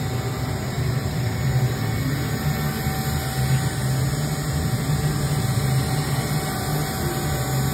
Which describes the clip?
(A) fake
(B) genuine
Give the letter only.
B